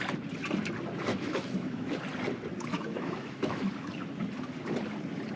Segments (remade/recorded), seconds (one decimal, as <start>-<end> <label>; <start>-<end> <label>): 0.0-1.1 recorded; 1.1-2.0 remade; 2.0-2.7 recorded; 2.7-3.7 remade; 3.7-5.4 recorded